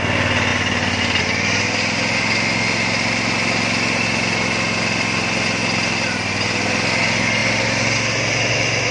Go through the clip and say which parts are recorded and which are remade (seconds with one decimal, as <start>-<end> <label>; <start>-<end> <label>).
0.0-8.9 recorded